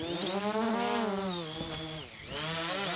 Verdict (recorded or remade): recorded